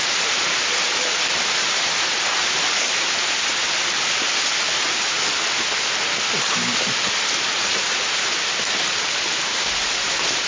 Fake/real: real